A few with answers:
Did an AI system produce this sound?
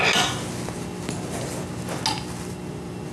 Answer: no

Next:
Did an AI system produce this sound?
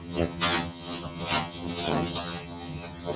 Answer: yes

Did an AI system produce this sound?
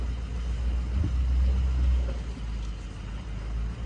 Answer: no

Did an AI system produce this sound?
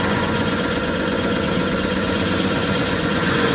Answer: yes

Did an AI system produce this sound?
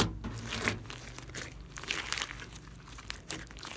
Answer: no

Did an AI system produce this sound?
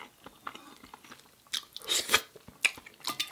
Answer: no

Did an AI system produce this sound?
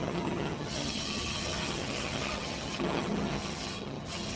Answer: yes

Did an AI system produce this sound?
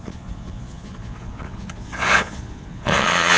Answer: yes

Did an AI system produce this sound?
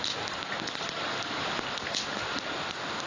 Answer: no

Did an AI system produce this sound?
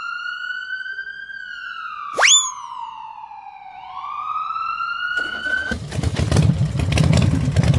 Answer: no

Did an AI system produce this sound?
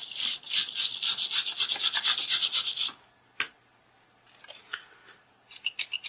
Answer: no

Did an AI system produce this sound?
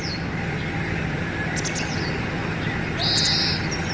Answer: no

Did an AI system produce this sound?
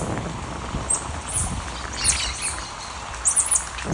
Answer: no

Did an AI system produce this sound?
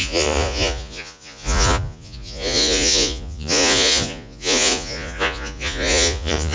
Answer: yes